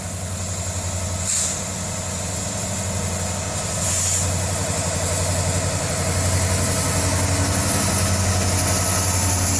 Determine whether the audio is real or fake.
real